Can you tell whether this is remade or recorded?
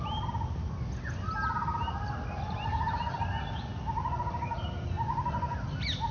recorded